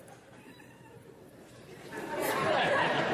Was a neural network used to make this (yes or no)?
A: yes